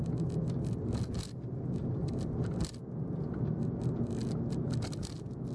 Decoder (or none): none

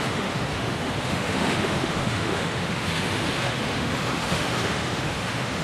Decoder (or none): autoencoder, DAC-VAE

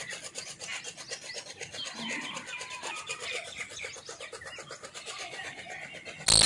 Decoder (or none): none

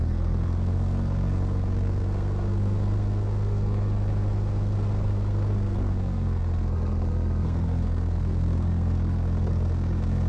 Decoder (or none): codec, SNAC